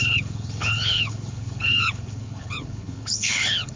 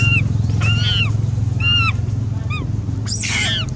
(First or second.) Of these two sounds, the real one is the second